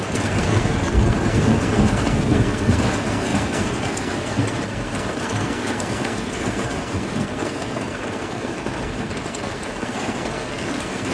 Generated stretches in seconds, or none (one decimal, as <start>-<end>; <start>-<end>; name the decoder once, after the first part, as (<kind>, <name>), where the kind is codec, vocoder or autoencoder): 0.0-11.1 (codec, SNAC)